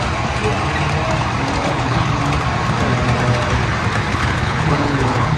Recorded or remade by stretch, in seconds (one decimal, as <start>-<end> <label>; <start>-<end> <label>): 0.0-1.6 recorded; 1.6-2.2 remade; 2.2-4.1 recorded; 4.1-5.4 remade